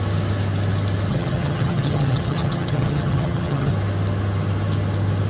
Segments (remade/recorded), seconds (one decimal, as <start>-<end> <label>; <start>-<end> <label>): 0.0-1.1 recorded; 1.1-3.7 remade; 3.7-5.3 recorded